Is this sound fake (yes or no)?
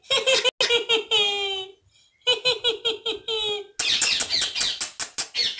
no